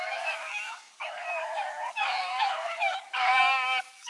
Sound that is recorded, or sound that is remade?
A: remade